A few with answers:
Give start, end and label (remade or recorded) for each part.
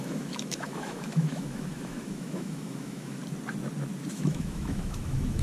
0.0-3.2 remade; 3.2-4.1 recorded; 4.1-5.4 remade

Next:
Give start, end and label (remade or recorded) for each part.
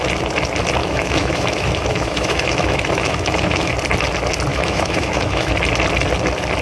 0.0-0.8 recorded; 0.8-3.7 remade; 3.7-4.5 recorded; 4.5-5.5 remade; 5.5-6.6 recorded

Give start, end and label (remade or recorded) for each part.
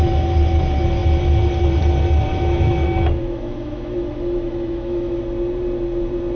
0.0-2.3 recorded; 2.3-5.2 remade; 5.2-6.3 recorded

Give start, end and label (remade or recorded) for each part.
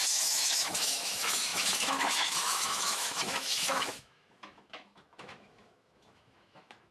0.0-6.9 remade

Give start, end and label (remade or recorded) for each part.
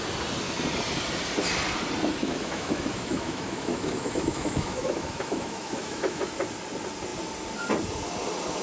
0.0-2.2 recorded; 2.2-6.3 remade; 6.3-8.6 recorded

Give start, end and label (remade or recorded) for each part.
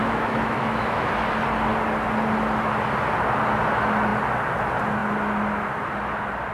0.0-1.1 remade; 1.1-6.5 recorded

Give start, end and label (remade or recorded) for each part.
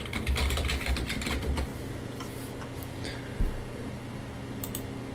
0.0-5.1 recorded